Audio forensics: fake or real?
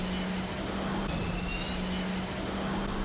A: real